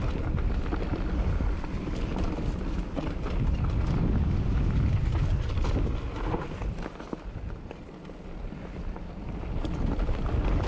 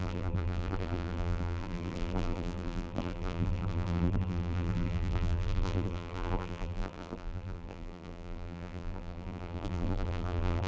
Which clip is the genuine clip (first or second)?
first